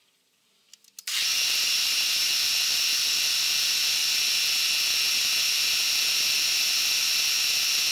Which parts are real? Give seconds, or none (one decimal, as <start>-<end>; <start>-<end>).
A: 0.0-1.3; 2.3-7.9